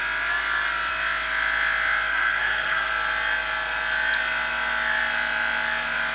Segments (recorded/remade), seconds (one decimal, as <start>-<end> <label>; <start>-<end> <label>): 0.0-2.1 recorded; 2.1-2.9 remade; 2.9-6.1 recorded